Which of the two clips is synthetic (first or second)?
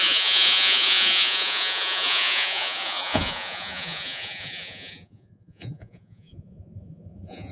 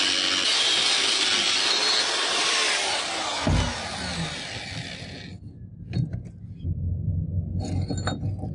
first